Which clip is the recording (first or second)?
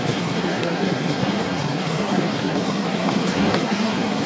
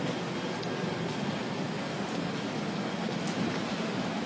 second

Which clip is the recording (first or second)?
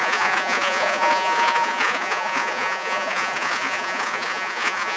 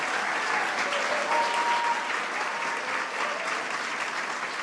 second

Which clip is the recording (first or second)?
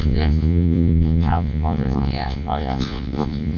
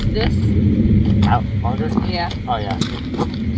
second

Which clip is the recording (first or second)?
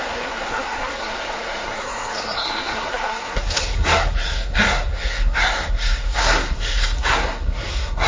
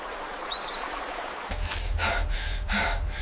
second